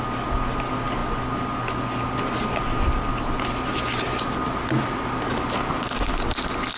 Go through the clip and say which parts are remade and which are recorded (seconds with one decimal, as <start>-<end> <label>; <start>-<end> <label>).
0.0-6.8 recorded